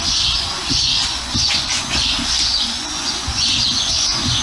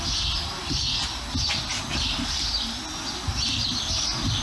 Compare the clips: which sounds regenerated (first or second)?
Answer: first